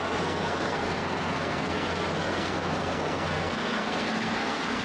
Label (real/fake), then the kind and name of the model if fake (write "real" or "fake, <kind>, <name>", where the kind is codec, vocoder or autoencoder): fake, codec, SNAC